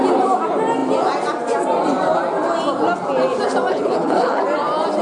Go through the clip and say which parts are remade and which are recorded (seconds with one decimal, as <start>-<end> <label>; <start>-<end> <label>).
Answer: 0.0-3.7 recorded; 3.7-4.4 remade; 4.4-5.0 recorded